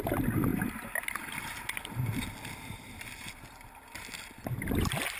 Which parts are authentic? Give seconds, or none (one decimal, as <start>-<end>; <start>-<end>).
0.0-5.2